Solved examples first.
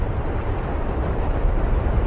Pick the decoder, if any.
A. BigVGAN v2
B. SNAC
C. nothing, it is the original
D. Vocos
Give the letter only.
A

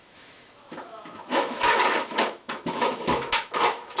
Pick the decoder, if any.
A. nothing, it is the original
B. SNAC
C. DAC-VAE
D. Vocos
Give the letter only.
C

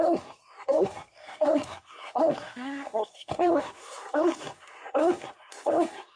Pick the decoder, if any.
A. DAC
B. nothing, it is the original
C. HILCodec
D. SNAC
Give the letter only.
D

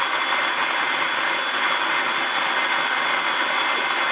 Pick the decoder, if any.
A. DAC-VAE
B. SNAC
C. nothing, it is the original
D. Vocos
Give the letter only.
C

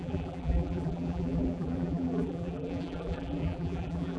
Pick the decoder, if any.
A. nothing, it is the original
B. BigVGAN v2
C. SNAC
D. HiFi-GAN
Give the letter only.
B